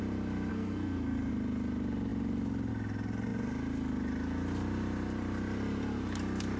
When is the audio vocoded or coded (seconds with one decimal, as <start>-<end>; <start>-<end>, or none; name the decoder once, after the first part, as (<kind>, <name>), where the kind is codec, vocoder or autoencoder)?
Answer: 0.5-1.3 (codec, SNAC)